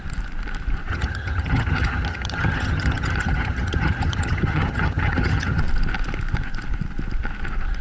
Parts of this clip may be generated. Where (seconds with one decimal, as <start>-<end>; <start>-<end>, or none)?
0.9-5.6

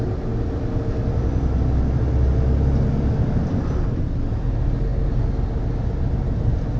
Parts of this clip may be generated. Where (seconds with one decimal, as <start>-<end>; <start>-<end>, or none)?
none

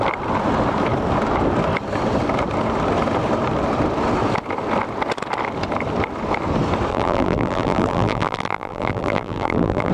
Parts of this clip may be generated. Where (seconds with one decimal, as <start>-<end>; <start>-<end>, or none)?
6.9-9.9

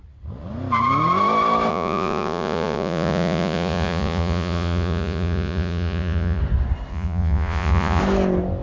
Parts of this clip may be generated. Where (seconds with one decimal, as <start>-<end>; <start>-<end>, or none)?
1.7-6.4; 6.9-8.0